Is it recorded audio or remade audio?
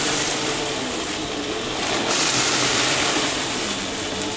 remade